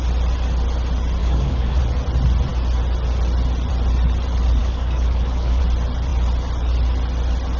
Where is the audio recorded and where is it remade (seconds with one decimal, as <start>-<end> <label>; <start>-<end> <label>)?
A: 0.0-1.2 recorded; 1.2-1.8 remade; 1.8-4.6 recorded; 4.6-5.6 remade; 5.6-7.6 recorded